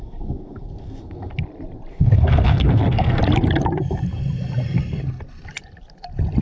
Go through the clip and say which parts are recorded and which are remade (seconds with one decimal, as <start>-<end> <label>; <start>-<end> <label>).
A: 0.0-1.3 remade; 1.3-1.9 recorded; 1.9-3.2 remade; 3.2-6.4 recorded